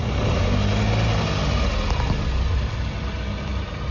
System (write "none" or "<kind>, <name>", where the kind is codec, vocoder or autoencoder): none